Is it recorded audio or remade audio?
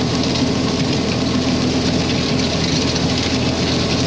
recorded